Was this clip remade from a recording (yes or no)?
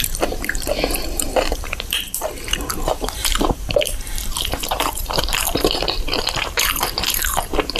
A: yes